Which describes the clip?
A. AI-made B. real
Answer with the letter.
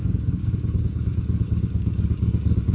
A